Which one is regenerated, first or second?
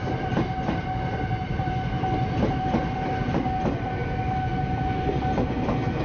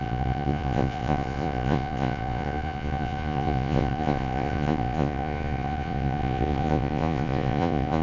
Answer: second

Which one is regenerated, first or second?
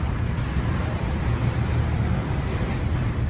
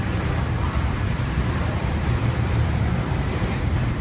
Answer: second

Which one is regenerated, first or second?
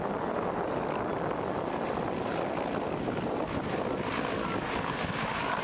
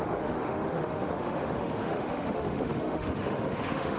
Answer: second